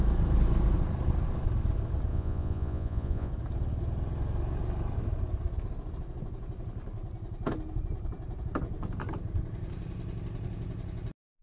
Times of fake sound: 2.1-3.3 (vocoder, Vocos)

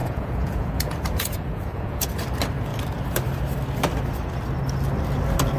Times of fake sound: 0.0-2.1 (vocoder, Vocos)

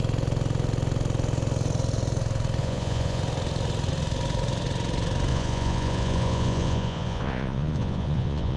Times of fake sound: 2.6-3.2 (vocoder, Vocos); 5.3-8.6

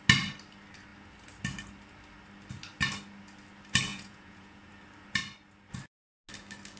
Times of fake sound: 3.9-4.7 (vocoder, Vocos)

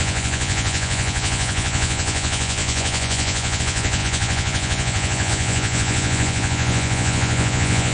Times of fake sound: 0.0-7.9 (vocoder, Vocos)

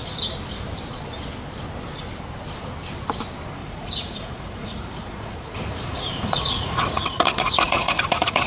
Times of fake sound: 3.6-8.5 (vocoder, Vocos)